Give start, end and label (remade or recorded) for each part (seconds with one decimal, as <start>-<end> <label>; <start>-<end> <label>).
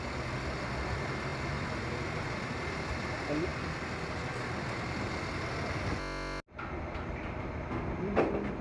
0.0-3.5 remade; 3.5-6.6 recorded; 6.6-8.6 remade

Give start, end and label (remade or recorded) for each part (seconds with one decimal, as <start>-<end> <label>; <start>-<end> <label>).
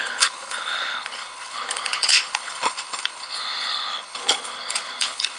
0.0-5.4 remade